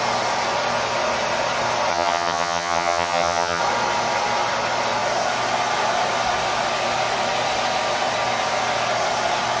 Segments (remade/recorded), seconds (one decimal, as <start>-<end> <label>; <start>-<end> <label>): 0.0-1.9 recorded; 1.9-3.6 remade; 3.6-9.6 recorded